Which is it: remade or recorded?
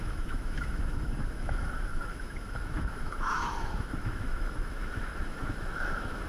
remade